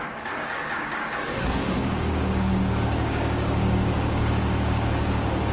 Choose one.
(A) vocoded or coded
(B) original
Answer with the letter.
A